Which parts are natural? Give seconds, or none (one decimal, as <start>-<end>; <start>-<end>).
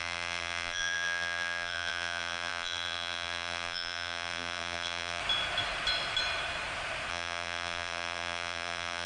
5.2-7.1